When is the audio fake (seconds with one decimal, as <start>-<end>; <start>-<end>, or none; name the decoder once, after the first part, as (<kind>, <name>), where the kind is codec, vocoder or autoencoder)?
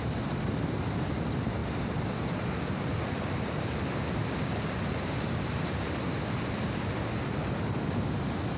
none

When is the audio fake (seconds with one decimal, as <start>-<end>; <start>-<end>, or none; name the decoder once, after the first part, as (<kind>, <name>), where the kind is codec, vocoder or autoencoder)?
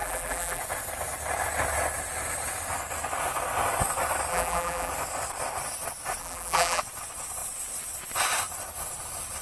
0.0-0.6 (vocoder, BigVGAN v2); 4.3-4.9; 6.2-6.8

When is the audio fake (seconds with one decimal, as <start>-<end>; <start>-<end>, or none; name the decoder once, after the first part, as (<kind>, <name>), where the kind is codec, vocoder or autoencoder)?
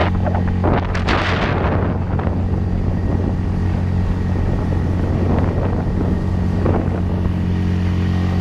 none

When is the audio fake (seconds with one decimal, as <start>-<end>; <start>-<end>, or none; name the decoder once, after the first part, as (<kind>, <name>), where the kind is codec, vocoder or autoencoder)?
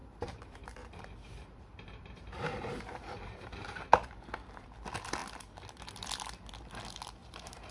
0.0-4.3 (vocoder, BigVGAN v2); 7.2-7.7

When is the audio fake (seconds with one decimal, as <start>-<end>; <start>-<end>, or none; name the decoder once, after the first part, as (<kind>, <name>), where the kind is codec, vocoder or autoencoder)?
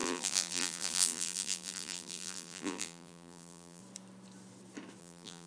0.0-3.8 (vocoder, BigVGAN v2); 5.0-5.5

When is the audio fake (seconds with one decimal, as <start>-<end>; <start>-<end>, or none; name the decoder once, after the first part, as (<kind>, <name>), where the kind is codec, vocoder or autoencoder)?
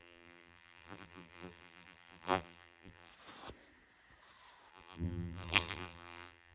0.0-3.1 (vocoder, BigVGAN v2); 4.7-6.5